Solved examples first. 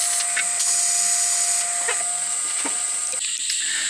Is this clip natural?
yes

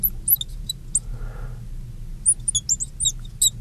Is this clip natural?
yes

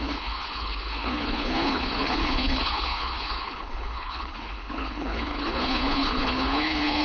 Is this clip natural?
no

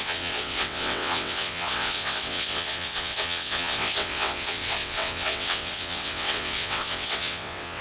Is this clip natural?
no